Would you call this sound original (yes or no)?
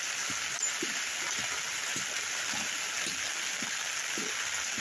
yes